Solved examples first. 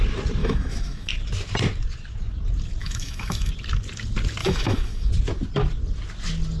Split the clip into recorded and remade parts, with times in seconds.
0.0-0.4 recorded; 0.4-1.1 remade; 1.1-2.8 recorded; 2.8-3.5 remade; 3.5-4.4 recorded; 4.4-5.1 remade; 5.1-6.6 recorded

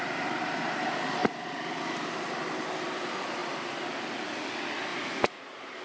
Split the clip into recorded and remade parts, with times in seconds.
0.0-4.9 recorded; 4.9-5.8 remade

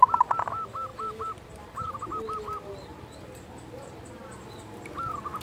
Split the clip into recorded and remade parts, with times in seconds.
0.0-0.9 recorded; 0.9-1.9 remade; 1.9-5.4 recorded